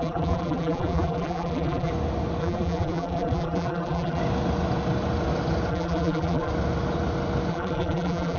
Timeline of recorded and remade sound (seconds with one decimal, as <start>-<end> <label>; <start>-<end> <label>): 0.0-1.9 remade; 1.9-2.4 recorded; 2.4-4.2 remade; 4.2-5.7 recorded; 5.7-6.5 remade; 6.5-7.5 recorded; 7.5-8.4 remade